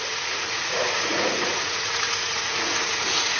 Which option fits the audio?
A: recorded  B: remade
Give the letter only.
B